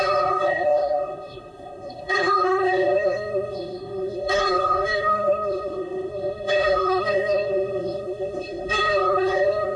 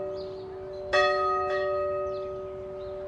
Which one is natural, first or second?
second